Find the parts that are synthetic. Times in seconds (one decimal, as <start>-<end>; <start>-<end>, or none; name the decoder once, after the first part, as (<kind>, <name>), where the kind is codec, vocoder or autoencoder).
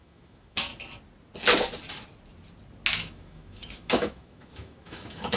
0.0-0.7 (autoencoder, DAC-VAE); 3.0-5.4